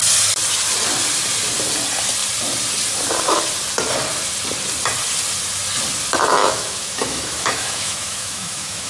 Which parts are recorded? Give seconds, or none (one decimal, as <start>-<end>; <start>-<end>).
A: 0.0-6.4